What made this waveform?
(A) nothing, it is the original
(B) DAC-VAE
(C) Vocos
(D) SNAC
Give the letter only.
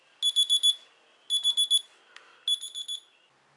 A